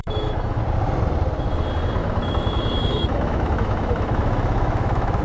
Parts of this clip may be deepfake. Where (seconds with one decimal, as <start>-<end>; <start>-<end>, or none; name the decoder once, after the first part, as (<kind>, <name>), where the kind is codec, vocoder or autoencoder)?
0.0-0.6 (autoencoder, DAC-VAE); 2.0-5.2